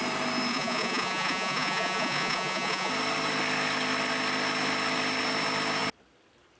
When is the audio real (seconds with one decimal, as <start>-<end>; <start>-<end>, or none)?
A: 0.0-0.5; 2.9-6.6